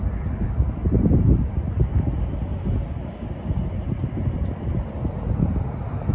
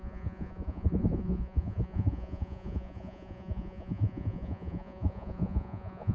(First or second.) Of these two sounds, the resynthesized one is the second